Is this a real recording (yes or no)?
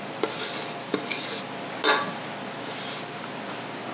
yes